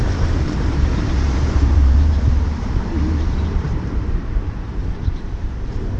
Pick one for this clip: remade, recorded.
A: remade